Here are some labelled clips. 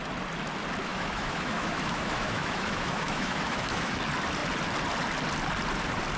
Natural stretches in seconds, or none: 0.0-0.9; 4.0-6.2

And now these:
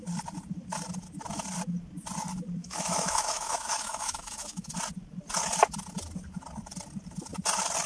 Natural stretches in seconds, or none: 0.0-2.6; 4.7-7.9